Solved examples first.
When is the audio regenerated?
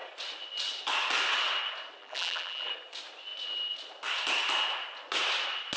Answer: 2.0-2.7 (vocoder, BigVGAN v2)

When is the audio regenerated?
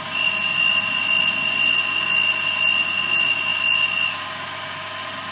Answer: none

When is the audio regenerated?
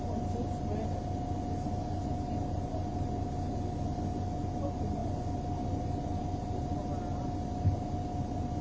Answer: none